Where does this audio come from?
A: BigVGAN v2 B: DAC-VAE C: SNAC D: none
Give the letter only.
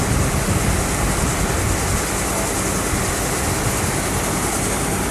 D